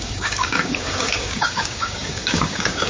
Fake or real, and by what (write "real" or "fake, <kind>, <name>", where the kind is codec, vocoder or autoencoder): fake, codec, DAC